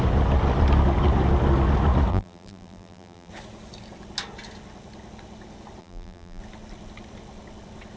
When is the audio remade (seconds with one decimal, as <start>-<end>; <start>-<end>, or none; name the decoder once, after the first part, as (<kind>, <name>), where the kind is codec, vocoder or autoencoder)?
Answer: 2.1-3.3 (vocoder, BigVGAN v2); 5.8-6.4

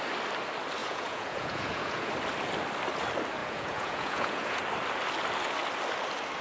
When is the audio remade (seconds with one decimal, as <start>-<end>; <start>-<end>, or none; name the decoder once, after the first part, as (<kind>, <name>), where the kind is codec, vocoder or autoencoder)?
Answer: 0.8-2.1 (vocoder, Vocos); 3.4-4.6